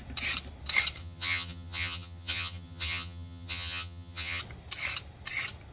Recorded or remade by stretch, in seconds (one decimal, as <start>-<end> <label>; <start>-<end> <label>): 0.0-1.0 recorded; 1.0-4.4 remade; 4.4-5.7 recorded